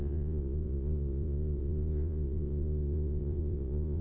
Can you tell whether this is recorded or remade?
remade